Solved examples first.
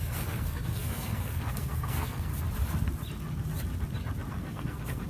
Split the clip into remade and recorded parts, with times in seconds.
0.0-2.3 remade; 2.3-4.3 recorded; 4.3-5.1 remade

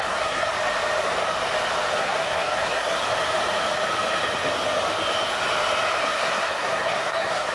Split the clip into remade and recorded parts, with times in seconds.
0.0-0.5 remade; 0.5-2.0 recorded; 2.0-3.0 remade; 3.0-6.0 recorded; 6.0-7.5 remade

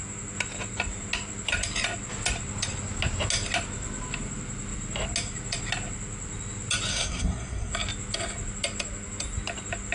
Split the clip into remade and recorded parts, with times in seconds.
0.0-6.9 recorded; 6.9-7.7 remade; 7.7-9.9 recorded

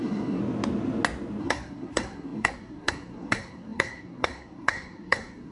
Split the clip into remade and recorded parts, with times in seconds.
0.0-0.4 remade; 0.4-1.4 recorded; 1.4-5.5 remade

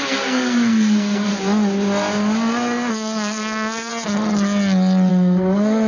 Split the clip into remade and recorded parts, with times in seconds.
0.0-1.3 remade; 1.3-2.9 recorded; 2.9-3.9 remade; 3.9-5.1 recorded; 5.1-5.9 remade

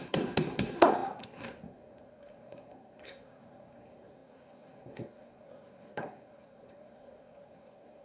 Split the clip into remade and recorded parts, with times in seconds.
0.0-8.0 remade